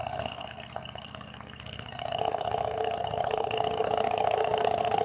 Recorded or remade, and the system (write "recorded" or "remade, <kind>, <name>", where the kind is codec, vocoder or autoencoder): remade, codec, SNAC